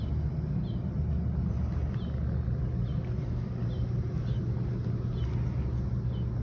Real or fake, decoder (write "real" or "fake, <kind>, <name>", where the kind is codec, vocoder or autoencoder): real